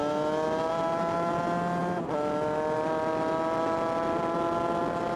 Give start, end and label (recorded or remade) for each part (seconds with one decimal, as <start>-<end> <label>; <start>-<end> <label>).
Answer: 0.0-5.2 recorded